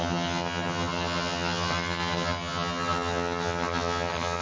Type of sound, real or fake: fake